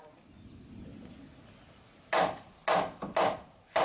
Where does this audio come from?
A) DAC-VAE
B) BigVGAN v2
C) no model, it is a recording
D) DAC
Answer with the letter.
C